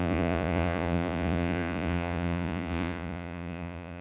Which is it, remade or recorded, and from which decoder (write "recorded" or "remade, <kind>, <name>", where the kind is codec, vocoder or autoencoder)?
remade, vocoder, Vocos